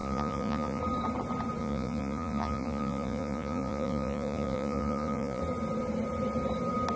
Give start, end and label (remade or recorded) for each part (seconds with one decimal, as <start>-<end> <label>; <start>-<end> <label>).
0.0-0.8 remade; 0.8-1.6 recorded; 1.6-5.4 remade; 5.4-7.0 recorded